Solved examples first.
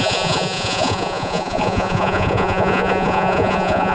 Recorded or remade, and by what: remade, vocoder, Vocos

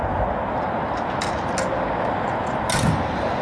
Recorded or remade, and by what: recorded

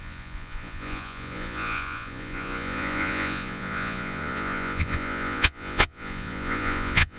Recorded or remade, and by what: remade, vocoder, Vocos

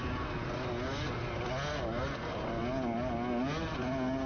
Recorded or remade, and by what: recorded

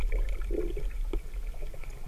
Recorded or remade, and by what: recorded